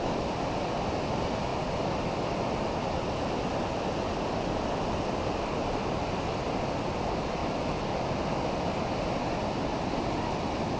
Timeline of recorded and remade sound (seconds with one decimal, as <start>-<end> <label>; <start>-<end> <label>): 0.0-10.8 recorded